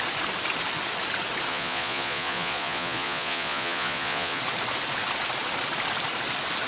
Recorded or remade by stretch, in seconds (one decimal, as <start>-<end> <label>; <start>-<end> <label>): 0.0-1.5 recorded; 1.5-4.4 remade; 4.4-6.7 recorded